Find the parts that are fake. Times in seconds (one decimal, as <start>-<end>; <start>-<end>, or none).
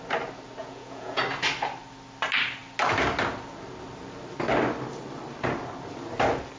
0.6-1.2